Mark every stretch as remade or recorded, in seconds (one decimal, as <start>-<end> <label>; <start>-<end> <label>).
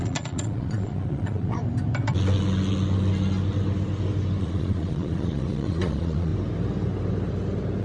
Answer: 0.0-1.6 remade; 1.6-4.4 recorded; 4.4-6.3 remade; 6.3-7.8 recorded